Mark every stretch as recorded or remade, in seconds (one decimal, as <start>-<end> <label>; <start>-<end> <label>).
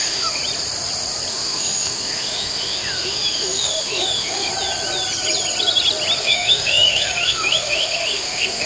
0.0-0.4 remade; 0.4-1.3 recorded; 1.3-4.5 remade; 4.5-6.2 recorded; 6.2-8.7 remade